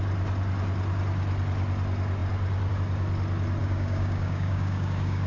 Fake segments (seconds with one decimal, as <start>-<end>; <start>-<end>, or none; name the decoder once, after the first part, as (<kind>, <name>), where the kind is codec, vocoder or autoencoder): 3.6-5.3 (codec, DAC)